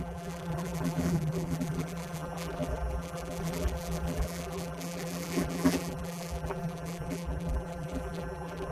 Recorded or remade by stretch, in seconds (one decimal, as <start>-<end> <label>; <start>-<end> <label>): 0.0-8.7 remade